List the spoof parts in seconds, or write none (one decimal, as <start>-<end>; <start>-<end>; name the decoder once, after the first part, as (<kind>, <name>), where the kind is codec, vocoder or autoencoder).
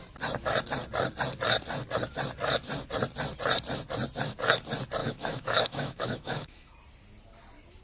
5.0-6.7 (autoencoder, DAC-VAE)